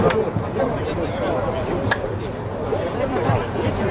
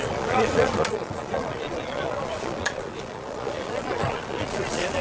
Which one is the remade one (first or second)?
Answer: second